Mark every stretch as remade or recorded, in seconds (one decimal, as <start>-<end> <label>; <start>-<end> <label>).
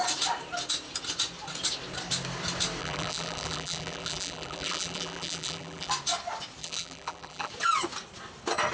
0.0-2.8 recorded; 2.8-5.9 remade; 5.9-6.6 recorded; 6.6-7.5 remade; 7.5-8.7 recorded